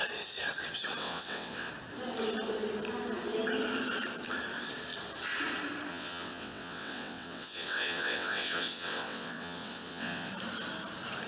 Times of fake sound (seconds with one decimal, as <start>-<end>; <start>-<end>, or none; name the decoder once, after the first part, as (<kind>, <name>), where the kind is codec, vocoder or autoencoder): 1.0-1.7 (vocoder, WaveNeXt); 5.9-10.3